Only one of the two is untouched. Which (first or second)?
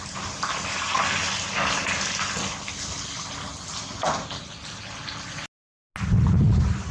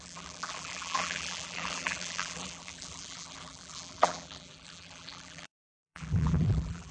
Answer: first